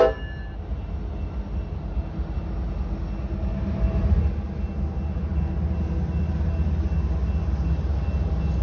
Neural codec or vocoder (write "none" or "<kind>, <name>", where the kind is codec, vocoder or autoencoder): none